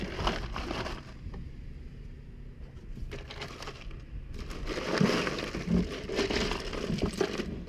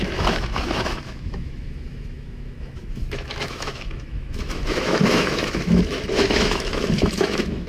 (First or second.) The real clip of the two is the first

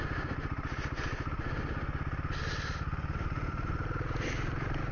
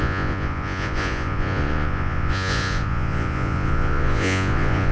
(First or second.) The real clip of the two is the first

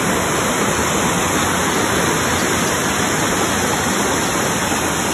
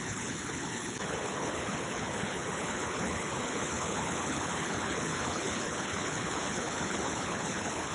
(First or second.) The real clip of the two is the first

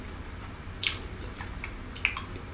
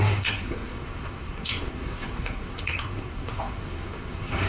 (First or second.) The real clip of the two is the first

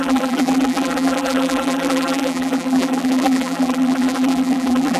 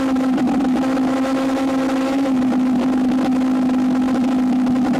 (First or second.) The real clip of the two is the second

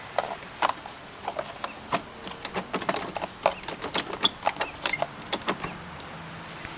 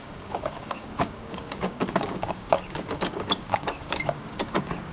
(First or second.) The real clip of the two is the first